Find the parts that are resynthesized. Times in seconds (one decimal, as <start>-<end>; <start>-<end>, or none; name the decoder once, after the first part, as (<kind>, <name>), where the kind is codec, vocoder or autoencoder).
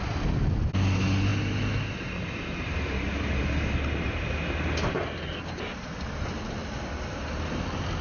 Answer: none